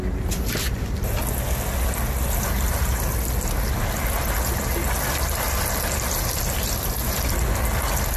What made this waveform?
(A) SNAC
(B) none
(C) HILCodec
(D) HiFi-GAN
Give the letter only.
B